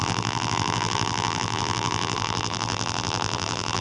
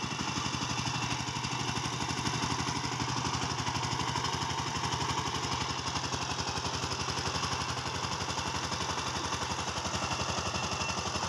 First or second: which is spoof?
first